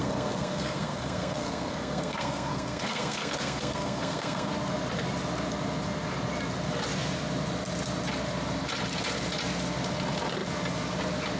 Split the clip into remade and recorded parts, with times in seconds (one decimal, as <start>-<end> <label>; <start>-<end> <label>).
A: 0.0-4.5 remade; 4.5-11.4 recorded